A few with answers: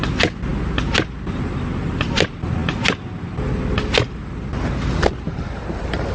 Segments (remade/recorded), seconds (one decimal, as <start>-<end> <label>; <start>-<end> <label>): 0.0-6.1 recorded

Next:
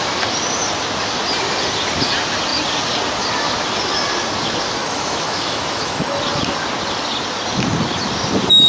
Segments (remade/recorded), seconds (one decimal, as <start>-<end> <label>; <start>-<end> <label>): 0.0-4.8 recorded; 4.8-6.2 remade; 6.2-8.7 recorded

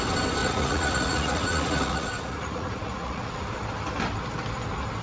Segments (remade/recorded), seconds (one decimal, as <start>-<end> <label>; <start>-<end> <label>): 0.0-0.4 recorded; 0.4-3.4 remade; 3.4-5.0 recorded

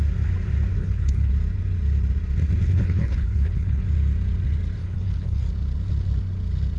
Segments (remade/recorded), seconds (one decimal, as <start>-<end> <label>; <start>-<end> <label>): 0.0-0.8 recorded; 0.8-1.3 remade; 1.3-2.6 recorded; 2.6-3.8 remade; 3.8-4.8 recorded; 4.8-5.5 remade; 5.5-6.8 recorded

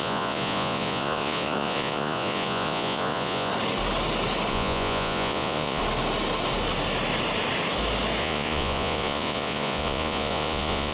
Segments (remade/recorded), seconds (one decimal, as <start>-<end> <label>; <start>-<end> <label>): 0.0-3.5 remade; 3.5-4.5 recorded; 4.5-5.8 remade; 5.8-8.2 recorded; 8.2-10.9 remade

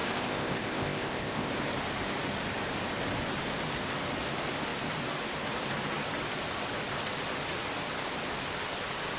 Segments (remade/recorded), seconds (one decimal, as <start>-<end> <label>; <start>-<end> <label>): 0.0-1.5 remade; 1.5-9.2 recorded

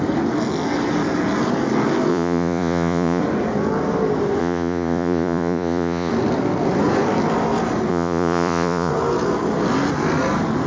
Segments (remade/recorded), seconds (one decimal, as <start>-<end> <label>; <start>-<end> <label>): 0.0-2.1 recorded; 2.1-3.2 remade; 3.2-4.4 recorded; 4.4-6.1 remade; 6.1-7.9 recorded; 7.9-8.9 remade; 8.9-10.7 recorded